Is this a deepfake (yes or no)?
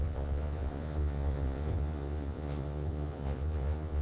yes